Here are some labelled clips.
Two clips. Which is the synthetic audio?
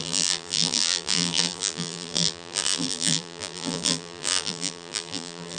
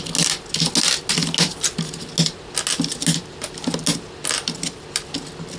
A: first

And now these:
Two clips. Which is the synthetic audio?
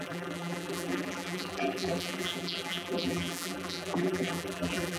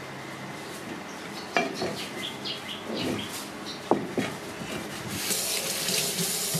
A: first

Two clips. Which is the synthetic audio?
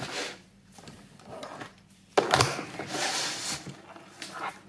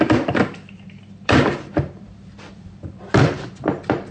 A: second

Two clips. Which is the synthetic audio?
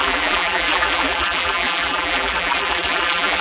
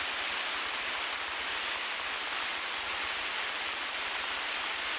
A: first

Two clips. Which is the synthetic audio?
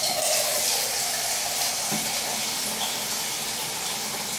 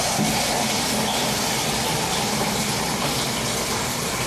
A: second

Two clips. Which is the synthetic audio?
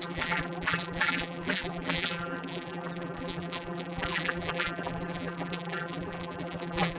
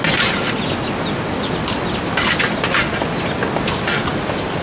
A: first